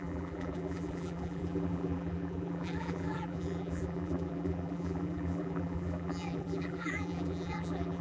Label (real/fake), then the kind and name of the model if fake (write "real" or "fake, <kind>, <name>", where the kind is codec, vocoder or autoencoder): fake, vocoder, BigVGAN v2